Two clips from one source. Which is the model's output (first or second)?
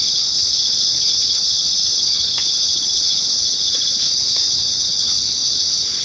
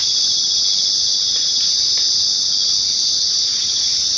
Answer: first